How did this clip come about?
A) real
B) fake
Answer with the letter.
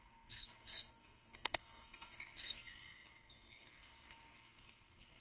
B